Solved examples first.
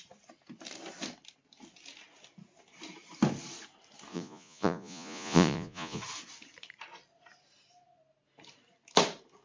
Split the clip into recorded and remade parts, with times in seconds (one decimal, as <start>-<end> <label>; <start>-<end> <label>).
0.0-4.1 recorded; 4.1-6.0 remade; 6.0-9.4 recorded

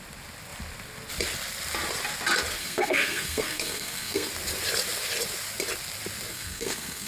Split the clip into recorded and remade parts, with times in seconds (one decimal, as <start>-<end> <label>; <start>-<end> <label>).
0.0-2.6 recorded; 2.6-4.3 remade; 4.3-6.3 recorded; 6.3-7.1 remade

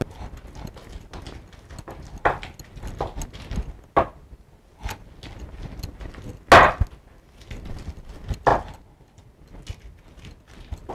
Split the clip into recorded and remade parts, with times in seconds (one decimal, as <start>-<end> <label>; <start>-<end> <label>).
0.0-10.9 recorded

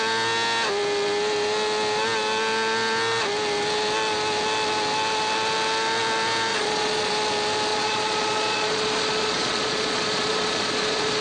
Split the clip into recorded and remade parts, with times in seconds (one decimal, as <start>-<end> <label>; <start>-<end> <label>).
0.0-6.5 recorded; 6.5-7.1 remade; 7.1-7.7 recorded; 7.7-11.2 remade

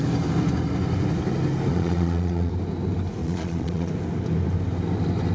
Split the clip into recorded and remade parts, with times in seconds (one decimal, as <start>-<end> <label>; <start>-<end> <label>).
0.0-1.7 recorded; 1.7-2.5 remade; 2.5-3.2 recorded; 3.2-3.9 remade; 3.9-5.3 recorded

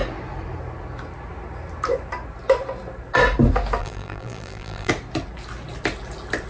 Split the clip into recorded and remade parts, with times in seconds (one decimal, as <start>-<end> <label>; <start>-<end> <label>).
0.0-3.8 recorded; 3.8-4.9 remade; 4.9-6.5 recorded

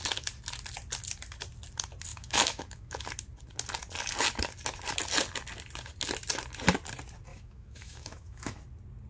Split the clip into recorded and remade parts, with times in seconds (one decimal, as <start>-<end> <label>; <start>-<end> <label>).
0.0-2.1 recorded; 2.1-3.0 remade; 3.0-7.3 recorded; 7.3-8.6 remade; 8.6-9.1 recorded

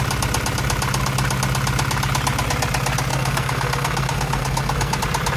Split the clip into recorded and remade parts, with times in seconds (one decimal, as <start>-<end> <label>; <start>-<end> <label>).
0.0-3.1 recorded; 3.1-5.0 remade; 5.0-5.4 recorded